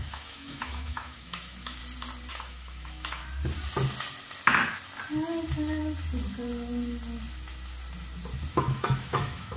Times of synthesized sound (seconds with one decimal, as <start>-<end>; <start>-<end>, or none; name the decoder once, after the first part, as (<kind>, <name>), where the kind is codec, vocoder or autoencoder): 0.0-1.8 (autoencoder, DAC-VAE); 2.3-3.2; 8.5-9.6